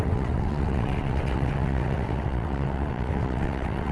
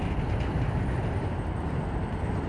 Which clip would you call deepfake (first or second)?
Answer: first